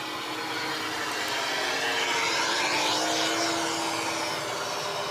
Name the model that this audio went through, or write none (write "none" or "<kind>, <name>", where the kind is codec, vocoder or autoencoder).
none